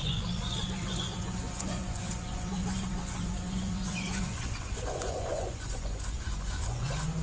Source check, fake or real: fake